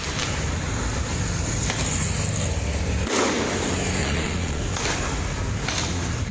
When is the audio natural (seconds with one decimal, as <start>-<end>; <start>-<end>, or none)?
0.0-4.0; 4.6-6.3